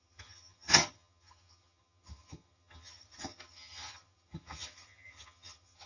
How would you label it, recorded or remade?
remade